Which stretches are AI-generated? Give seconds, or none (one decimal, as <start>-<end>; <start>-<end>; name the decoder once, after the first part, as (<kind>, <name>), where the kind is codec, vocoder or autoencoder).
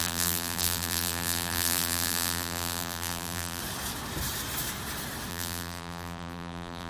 0.0-3.6 (vocoder, BigVGAN v2); 5.3-6.9